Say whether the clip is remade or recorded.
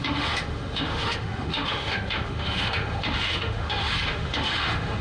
remade